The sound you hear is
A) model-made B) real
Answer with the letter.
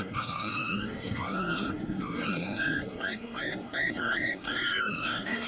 A